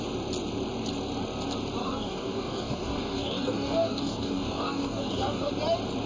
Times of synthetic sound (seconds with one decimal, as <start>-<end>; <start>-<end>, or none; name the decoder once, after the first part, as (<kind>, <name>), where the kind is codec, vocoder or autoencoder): 1.8-5.5 (codec, DAC)